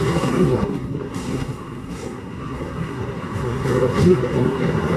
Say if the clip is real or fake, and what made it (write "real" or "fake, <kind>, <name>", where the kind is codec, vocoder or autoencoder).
fake, codec, SNAC